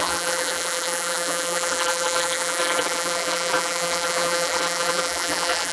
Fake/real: fake